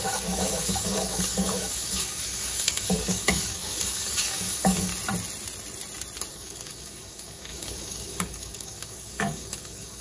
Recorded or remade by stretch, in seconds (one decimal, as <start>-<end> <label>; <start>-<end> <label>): 0.0-4.9 remade; 4.9-6.3 recorded; 6.3-10.0 remade